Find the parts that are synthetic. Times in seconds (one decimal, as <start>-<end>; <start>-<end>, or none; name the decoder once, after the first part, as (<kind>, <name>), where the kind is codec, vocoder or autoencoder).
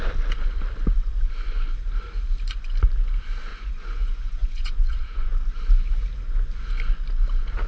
3.5-5.3 (vocoder, Vocos)